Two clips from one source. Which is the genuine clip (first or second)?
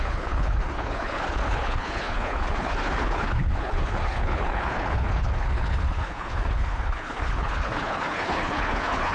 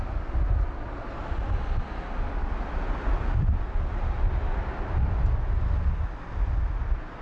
second